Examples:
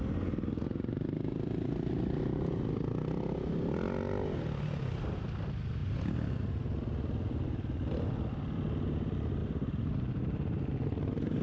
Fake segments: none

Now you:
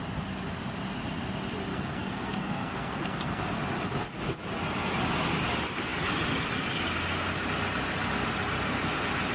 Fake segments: 1.7-3.6 (codec, SNAC)

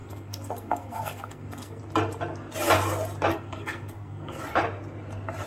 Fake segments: 0.0-1.8 (codec, SNAC); 3.3-4.4

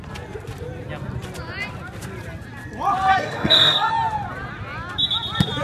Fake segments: 3.1-3.9 (codec, SNAC)

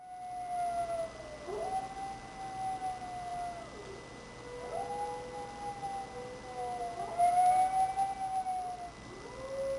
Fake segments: none

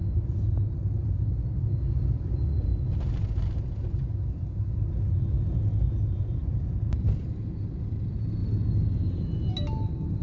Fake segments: none

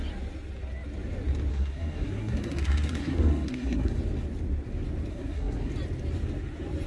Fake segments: 1.5-4.0 (codec, SNAC); 5.1-5.7